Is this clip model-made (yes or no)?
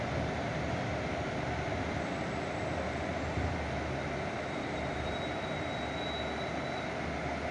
no